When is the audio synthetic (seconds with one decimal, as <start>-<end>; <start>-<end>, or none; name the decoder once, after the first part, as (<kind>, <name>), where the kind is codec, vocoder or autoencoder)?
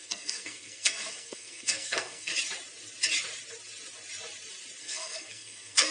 0.0-2.3 (codec, SNAC); 4.8-5.9